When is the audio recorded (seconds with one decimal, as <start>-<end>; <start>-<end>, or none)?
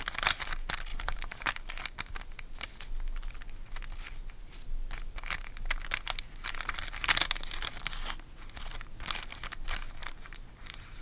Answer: 0.0-0.9; 1.5-10.0